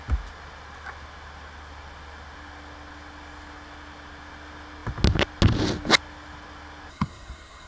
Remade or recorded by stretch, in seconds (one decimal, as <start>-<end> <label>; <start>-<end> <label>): 0.0-6.9 recorded; 6.9-7.7 remade